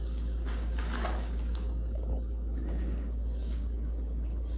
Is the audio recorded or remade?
remade